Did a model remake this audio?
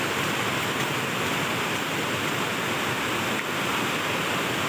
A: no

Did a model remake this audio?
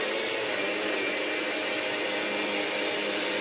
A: no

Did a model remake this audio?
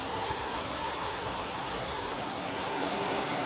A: yes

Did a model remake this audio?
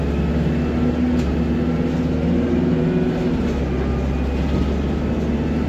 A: no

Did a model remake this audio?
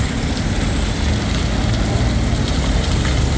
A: no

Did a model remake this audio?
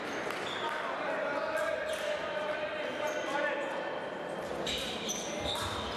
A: no